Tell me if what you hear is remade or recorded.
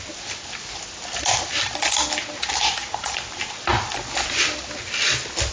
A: recorded